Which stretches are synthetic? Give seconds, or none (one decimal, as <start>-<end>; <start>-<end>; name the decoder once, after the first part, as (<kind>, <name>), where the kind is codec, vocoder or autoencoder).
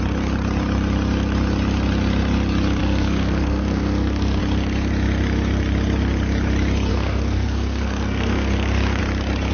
2.8-4.4 (codec, SNAC); 6.9-9.0